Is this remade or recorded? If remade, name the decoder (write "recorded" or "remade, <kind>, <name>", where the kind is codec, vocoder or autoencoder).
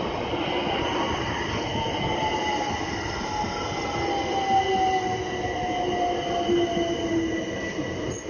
recorded